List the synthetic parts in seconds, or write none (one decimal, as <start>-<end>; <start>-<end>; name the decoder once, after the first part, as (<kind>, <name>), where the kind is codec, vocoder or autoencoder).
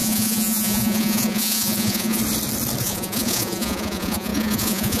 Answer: 0.0-2.2 (vocoder, Vocos); 2.8-5.0